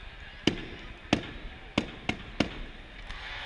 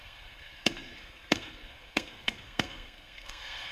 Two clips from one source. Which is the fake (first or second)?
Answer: second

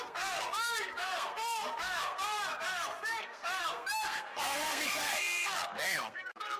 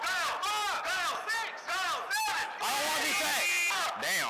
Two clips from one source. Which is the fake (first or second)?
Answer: first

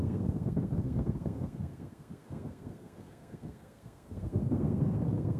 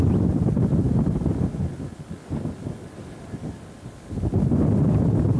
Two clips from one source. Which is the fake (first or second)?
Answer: first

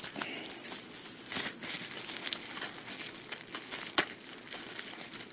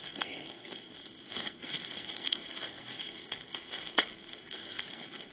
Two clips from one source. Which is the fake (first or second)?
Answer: second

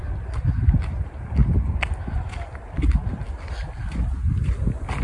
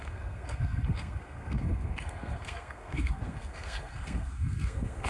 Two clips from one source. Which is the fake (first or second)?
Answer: second